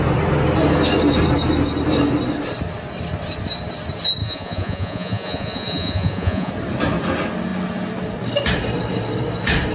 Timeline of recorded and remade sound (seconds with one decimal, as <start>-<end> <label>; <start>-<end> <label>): 0.0-4.2 recorded; 4.2-6.5 remade; 6.5-9.7 recorded